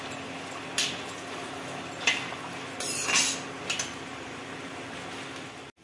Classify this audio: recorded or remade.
recorded